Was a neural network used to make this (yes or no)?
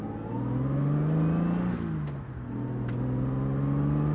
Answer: no